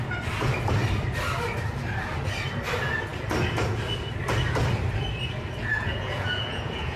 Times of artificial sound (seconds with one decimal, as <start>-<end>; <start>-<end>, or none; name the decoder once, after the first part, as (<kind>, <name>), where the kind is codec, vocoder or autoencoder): 5.7-7.0 (vocoder, Vocos)